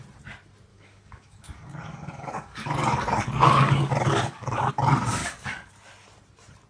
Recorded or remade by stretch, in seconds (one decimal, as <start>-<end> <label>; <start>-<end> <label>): 0.0-0.7 recorded; 0.7-4.7 remade; 4.7-5.2 recorded; 5.2-5.7 remade; 5.7-6.7 recorded